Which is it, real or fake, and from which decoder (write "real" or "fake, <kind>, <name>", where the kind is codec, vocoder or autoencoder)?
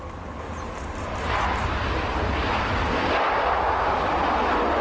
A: real